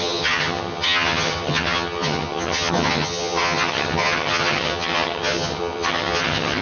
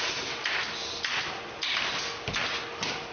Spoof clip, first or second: first